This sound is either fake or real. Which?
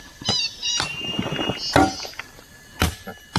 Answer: real